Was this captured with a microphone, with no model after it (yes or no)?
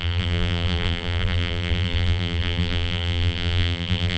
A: no